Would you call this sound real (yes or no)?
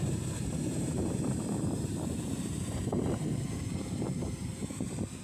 no